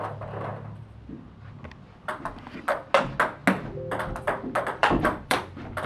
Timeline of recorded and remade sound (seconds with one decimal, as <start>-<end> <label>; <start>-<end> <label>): 0.0-4.8 recorded; 4.8-5.4 remade; 5.4-5.9 recorded